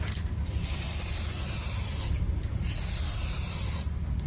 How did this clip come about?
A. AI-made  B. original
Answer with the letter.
B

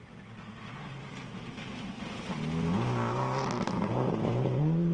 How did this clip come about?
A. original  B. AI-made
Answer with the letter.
A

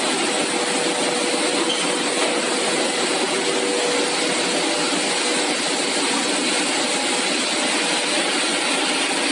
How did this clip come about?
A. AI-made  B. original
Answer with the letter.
B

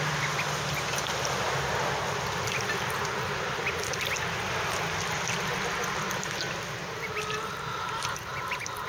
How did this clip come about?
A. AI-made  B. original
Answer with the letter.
B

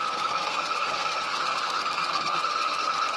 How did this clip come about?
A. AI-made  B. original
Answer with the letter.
A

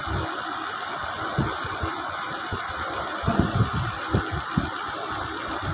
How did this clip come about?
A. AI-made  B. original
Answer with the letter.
B